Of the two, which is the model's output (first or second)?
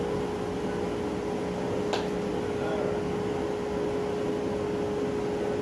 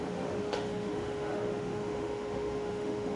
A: second